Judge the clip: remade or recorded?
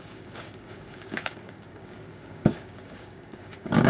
remade